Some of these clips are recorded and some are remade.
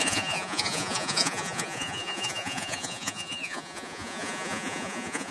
remade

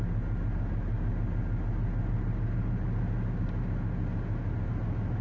recorded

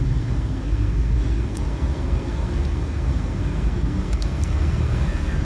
remade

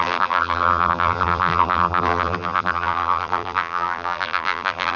remade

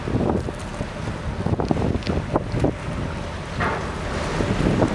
recorded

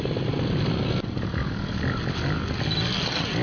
recorded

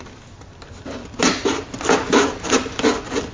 recorded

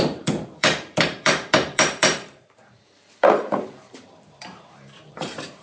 remade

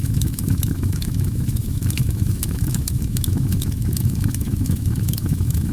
remade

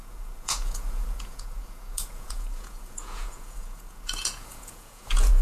remade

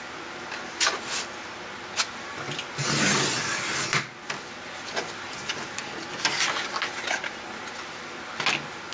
recorded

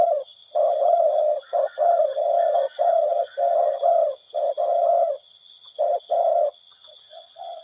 remade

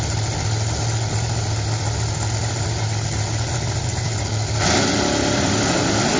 recorded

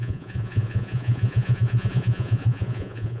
remade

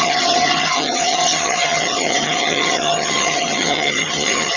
remade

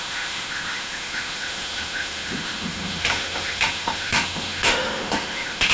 remade